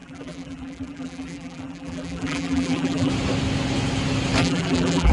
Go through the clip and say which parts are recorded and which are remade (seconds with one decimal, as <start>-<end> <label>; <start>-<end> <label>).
0.0-3.1 remade; 3.1-4.4 recorded; 4.4-5.1 remade